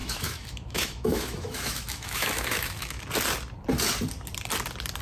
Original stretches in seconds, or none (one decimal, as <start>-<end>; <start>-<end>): 3.0-5.0